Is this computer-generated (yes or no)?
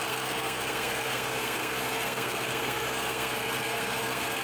yes